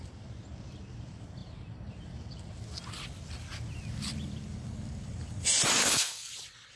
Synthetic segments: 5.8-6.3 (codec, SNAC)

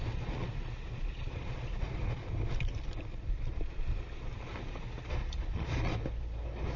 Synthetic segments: 0.0-2.2 (vocoder, Vocos); 4.7-5.9

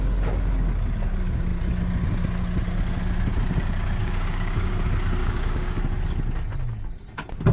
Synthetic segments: 4.0-4.7 (codec, DAC); 5.2-5.8

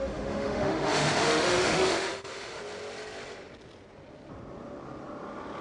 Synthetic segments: 0.0-2.6 (autoencoder, DAC-VAE)

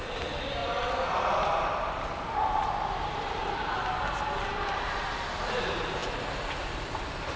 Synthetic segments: none